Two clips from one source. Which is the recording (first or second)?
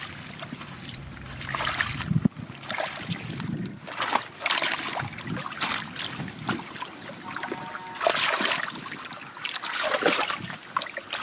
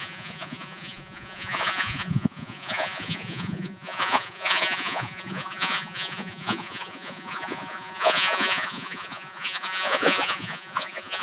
first